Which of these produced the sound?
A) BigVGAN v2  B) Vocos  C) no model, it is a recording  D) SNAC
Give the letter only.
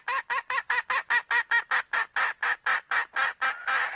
C